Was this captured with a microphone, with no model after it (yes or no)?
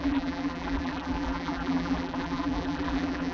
no